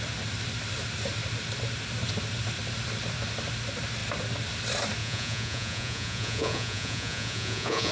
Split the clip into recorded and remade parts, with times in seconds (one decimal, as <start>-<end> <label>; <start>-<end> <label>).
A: 0.0-5.0 recorded; 5.0-7.9 remade